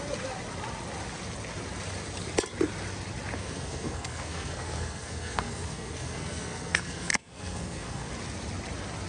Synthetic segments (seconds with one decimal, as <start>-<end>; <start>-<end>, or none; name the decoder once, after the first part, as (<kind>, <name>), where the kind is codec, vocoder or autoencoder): 3.4-8.1 (codec, SNAC)